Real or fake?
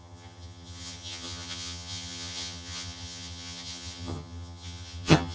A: fake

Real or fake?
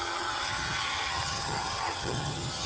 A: fake